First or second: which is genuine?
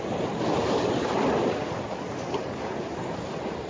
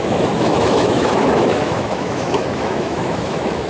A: first